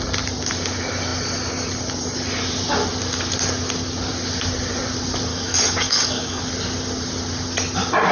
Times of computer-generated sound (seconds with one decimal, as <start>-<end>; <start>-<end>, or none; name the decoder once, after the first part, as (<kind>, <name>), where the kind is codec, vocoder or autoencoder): 5.3-6.4 (codec, DAC)